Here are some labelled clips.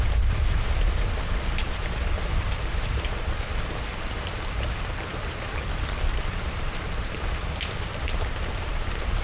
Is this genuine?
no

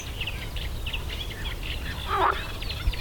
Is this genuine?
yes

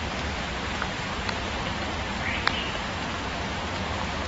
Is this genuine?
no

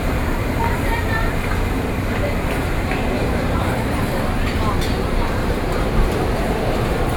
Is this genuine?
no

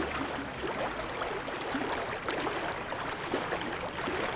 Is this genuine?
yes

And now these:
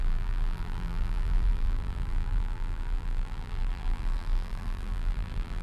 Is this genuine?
no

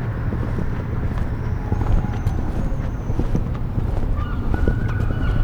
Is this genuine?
no